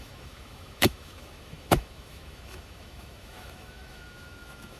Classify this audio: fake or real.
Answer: fake